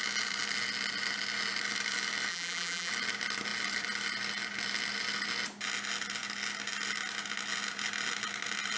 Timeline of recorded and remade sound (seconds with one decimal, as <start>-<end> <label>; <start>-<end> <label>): 0.0-2.3 recorded; 2.3-2.9 remade; 2.9-8.8 recorded